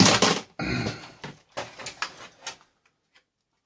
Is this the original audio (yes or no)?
yes